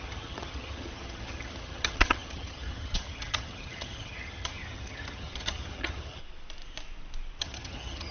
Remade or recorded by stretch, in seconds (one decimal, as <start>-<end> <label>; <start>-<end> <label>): 0.0-6.2 remade; 6.2-7.4 recorded; 7.4-8.1 remade